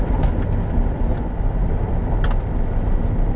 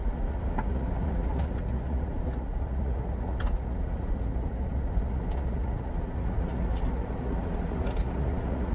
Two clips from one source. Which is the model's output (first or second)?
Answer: second